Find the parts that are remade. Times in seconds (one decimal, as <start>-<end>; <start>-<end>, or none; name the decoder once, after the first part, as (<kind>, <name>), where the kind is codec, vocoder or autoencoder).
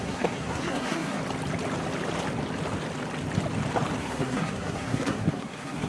0.0-1.2 (codec, SNAC); 4.0-5.9